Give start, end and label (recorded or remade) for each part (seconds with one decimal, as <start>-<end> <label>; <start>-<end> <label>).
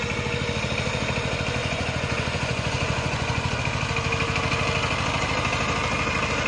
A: 0.0-1.6 recorded; 1.6-3.6 remade; 3.6-6.5 recorded